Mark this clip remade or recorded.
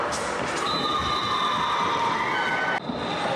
recorded